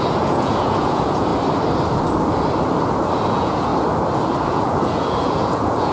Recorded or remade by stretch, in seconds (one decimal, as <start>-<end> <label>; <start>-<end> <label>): 0.0-1.3 remade; 1.3-3.3 recorded; 3.3-3.7 remade; 3.7-4.4 recorded; 4.4-5.9 remade